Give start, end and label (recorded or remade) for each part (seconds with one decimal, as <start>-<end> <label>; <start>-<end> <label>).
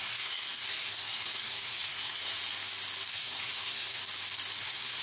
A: 0.0-2.4 remade; 2.4-3.1 recorded; 3.1-4.0 remade; 4.0-4.6 recorded; 4.6-5.0 remade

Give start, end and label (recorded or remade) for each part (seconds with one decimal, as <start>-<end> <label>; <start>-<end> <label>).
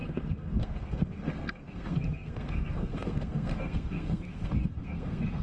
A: 0.0-5.4 remade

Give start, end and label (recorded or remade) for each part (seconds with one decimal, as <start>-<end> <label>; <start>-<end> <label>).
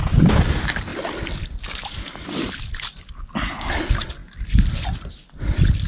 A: 0.0-5.9 recorded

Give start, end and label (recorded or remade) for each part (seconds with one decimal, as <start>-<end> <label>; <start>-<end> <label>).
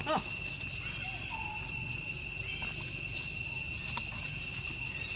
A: 0.0-5.2 recorded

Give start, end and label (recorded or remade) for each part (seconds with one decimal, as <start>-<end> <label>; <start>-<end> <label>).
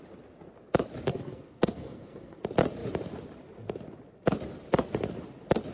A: 0.0-1.1 recorded; 1.1-2.4 remade; 2.4-5.7 recorded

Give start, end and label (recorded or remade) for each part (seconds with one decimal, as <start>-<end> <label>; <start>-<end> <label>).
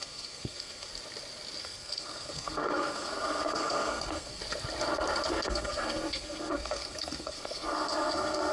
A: 0.0-0.9 remade; 0.9-1.6 recorded; 1.6-4.4 remade; 4.4-5.3 recorded; 5.3-8.5 remade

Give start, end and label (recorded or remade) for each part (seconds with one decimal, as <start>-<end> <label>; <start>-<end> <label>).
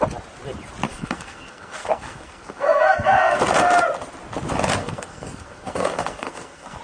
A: 0.0-0.9 recorded; 0.9-3.4 remade; 3.4-4.8 recorded; 4.8-6.8 remade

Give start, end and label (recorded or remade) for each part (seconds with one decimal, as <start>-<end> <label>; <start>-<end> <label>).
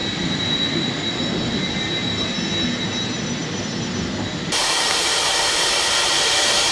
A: 0.0-6.7 recorded